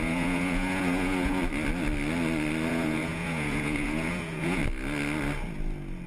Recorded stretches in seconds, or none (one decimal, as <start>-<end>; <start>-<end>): 1.4-2.7; 4.6-6.1